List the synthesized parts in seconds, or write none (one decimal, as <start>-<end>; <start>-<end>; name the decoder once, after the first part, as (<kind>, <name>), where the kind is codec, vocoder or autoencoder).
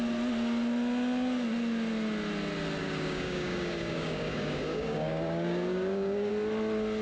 2.8-6.3 (codec, DAC)